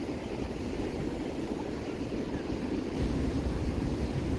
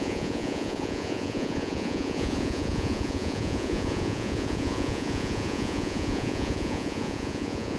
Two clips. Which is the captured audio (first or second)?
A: first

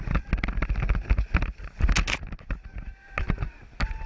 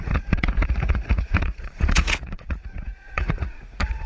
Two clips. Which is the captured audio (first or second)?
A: first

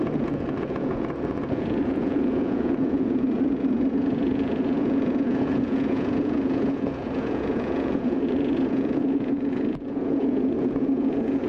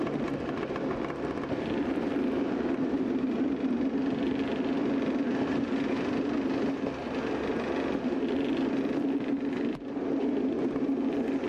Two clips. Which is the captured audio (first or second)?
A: second